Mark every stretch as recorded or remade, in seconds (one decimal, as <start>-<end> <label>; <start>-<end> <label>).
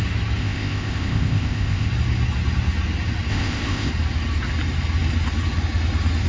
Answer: 0.0-0.4 recorded; 0.4-1.9 remade; 1.9-3.3 recorded; 3.3-3.9 remade; 3.9-6.3 recorded